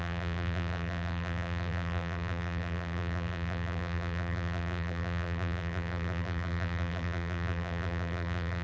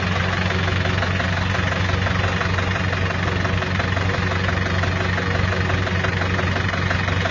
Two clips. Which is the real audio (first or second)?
second